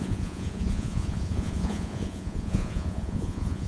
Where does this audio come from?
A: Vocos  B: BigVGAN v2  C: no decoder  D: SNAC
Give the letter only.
A